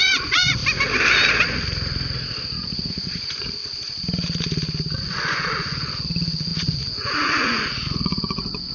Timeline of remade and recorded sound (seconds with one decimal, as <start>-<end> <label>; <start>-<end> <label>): 0.0-0.6 remade; 0.6-3.2 recorded; 3.2-3.6 remade; 3.6-5.0 recorded; 5.0-8.7 remade